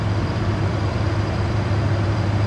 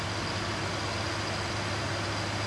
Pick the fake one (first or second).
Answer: first